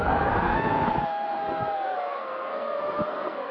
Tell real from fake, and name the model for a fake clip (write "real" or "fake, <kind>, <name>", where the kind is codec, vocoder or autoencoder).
fake, codec, SNAC